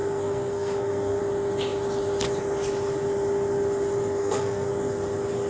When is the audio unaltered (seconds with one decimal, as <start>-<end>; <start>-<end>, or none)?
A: 1.2-4.2; 4.7-5.5